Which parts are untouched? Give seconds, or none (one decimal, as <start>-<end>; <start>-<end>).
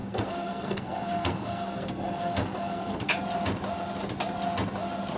3.1-5.2